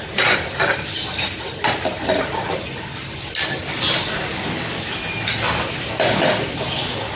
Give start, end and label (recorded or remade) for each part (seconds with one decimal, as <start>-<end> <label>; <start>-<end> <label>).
0.0-7.2 recorded